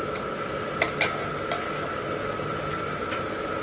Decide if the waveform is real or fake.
real